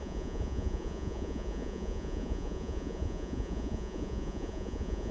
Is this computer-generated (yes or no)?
yes